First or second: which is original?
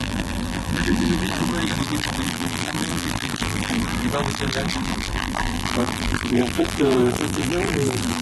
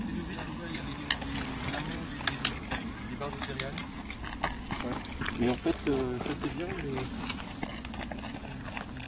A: second